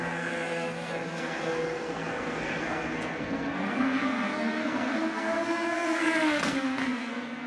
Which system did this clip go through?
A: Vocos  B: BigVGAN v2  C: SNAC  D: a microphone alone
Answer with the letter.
C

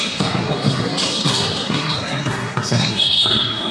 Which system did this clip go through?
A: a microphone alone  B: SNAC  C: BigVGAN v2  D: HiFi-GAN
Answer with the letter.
B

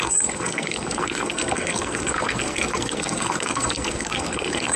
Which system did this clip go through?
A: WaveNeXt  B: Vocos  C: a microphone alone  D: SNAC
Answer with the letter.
D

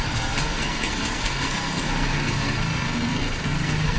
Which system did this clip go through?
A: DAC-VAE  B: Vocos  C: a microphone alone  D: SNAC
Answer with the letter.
D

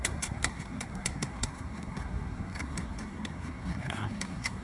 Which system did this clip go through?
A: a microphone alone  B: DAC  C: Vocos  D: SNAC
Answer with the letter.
D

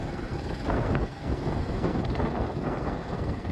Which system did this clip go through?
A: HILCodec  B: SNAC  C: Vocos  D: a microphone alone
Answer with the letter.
B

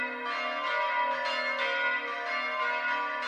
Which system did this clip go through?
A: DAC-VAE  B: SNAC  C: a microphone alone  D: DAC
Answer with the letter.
C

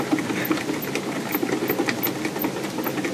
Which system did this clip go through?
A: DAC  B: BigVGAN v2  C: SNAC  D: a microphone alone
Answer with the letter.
D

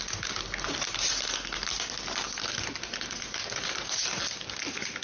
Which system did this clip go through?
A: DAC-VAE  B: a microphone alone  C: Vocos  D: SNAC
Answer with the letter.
B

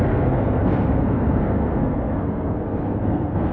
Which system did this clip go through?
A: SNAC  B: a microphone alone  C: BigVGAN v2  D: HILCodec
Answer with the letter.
A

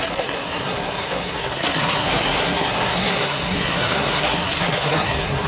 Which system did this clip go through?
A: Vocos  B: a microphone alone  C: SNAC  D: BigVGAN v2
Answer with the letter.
C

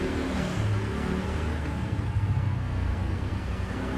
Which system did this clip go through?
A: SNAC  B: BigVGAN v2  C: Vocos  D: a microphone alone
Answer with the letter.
A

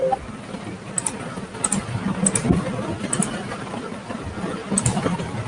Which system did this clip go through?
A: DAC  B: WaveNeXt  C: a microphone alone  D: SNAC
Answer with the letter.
C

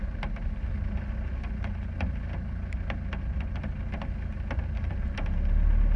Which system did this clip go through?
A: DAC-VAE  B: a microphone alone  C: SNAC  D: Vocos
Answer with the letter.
B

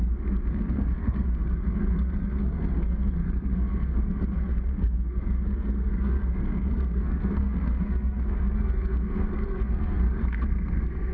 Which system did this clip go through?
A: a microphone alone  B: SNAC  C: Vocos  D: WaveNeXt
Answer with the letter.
B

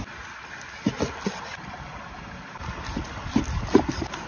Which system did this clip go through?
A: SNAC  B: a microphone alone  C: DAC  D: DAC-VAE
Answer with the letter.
B